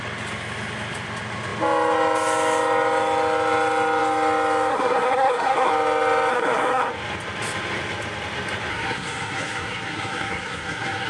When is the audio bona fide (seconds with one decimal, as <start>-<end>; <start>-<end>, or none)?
0.0-4.7; 5.7-6.3; 6.9-8.7